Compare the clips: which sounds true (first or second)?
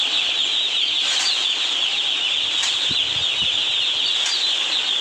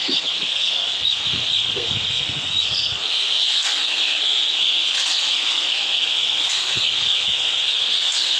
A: first